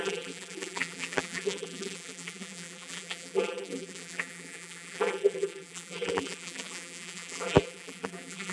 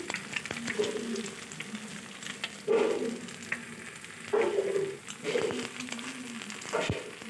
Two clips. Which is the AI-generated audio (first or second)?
first